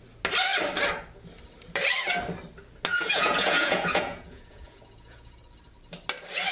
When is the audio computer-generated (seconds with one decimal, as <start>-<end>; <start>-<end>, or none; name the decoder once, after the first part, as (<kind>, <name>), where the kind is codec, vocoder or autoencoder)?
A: 2.9-5.4 (vocoder, Vocos)

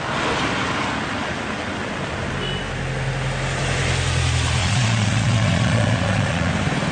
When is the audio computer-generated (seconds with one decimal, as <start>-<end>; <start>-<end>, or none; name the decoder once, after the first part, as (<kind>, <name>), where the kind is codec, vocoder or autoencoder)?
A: 4.6-6.5 (vocoder, Vocos)

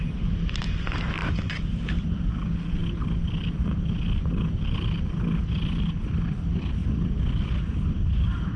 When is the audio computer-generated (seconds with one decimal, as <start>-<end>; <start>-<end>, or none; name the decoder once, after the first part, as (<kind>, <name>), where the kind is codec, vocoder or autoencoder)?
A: none